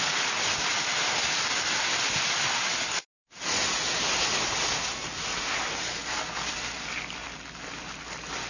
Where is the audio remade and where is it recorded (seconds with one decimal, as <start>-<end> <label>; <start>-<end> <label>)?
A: 0.0-8.5 recorded

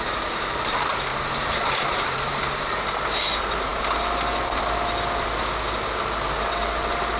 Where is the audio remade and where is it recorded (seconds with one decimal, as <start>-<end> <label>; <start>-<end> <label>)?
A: 0.0-1.1 recorded; 1.1-2.3 remade; 2.3-7.2 recorded

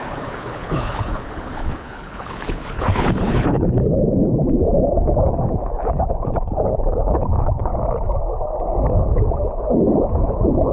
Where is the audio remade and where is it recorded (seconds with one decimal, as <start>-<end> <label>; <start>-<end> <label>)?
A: 0.0-7.7 remade; 7.7-8.9 recorded; 8.9-10.7 remade

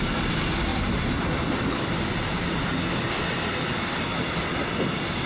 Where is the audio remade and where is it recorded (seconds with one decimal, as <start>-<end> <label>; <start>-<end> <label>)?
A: 0.0-5.3 recorded

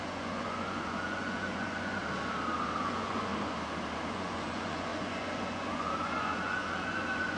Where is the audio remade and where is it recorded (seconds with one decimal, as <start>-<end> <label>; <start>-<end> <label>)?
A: 0.0-2.0 remade; 2.0-2.8 recorded; 2.8-3.3 remade; 3.3-4.1 recorded; 4.1-7.4 remade

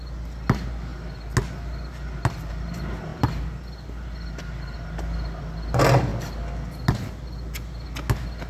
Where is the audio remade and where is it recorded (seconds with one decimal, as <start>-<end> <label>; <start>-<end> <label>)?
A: 0.0-8.5 recorded

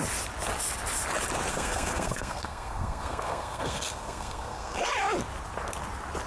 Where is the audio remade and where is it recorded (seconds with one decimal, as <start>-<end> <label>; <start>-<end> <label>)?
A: 0.0-1.5 recorded; 1.5-4.9 remade; 4.9-6.3 recorded

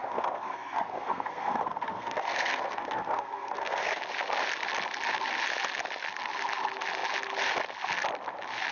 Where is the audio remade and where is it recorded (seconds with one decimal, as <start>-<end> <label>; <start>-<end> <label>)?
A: 0.0-4.0 remade; 4.0-8.7 recorded